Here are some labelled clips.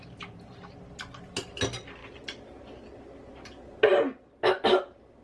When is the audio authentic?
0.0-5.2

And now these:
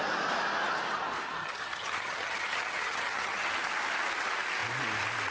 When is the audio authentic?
0.0-1.4; 3.5-5.3